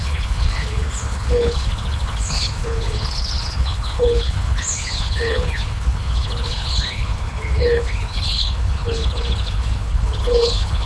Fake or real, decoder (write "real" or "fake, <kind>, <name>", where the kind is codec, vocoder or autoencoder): fake, codec, HILCodec